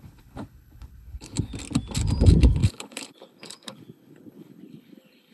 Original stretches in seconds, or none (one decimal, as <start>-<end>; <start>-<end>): 1.5-2.2